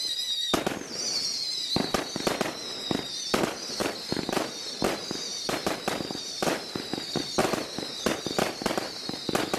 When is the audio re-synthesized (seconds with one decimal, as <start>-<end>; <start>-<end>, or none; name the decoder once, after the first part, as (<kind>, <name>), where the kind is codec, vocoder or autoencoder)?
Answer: 3.8-7.2 (vocoder, BigVGAN v2)